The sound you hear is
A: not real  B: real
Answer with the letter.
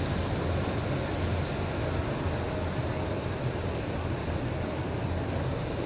B